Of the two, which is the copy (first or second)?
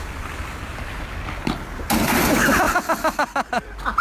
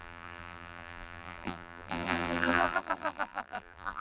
second